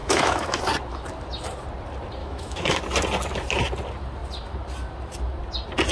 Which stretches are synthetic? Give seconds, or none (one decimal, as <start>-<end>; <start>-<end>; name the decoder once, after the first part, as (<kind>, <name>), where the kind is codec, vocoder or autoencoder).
0.0-0.6 (autoencoder, DAC-VAE); 2.2-2.8